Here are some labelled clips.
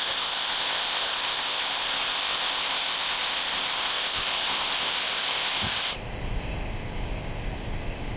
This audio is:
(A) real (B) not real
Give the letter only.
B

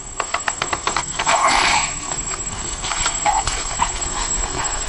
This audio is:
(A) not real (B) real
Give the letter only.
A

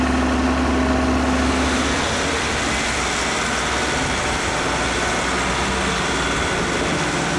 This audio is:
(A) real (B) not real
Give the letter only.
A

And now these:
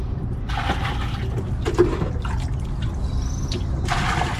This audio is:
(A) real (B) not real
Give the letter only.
A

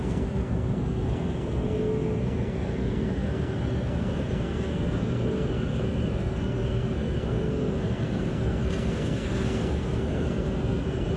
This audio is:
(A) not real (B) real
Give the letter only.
A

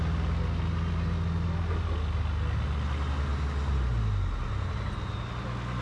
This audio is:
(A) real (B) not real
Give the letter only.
A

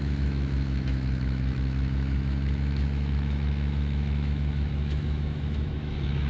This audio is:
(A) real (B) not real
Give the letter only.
B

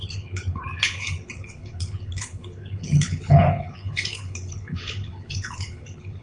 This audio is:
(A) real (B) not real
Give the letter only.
B